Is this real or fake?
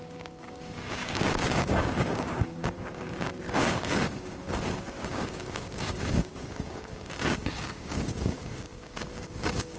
fake